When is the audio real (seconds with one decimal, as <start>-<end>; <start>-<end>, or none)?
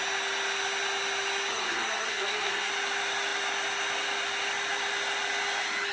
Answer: 0.0-1.5; 2.7-5.9